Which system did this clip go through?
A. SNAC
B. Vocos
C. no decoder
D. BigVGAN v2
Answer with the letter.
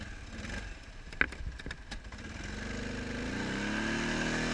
C